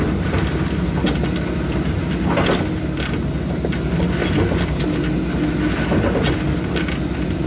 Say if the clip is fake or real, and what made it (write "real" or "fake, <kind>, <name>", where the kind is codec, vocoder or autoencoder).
real